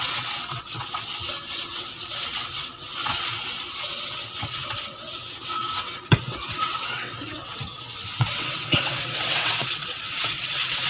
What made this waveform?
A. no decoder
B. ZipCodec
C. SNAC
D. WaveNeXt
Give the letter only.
D